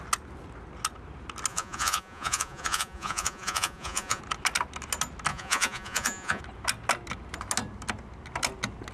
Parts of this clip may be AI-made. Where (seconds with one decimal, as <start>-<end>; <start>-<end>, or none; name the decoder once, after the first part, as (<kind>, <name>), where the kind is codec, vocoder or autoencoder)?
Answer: 1.5-4.2 (vocoder, Vocos); 5.3-6.4